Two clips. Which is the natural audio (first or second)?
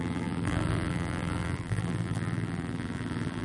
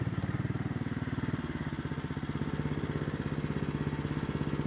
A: second